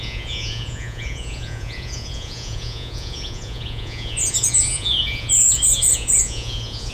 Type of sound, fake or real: fake